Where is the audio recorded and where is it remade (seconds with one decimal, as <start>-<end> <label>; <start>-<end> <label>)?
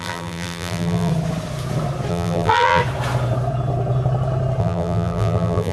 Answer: 0.0-1.1 remade; 1.1-2.1 recorded; 2.1-2.8 remade; 2.8-4.6 recorded; 4.6-5.7 remade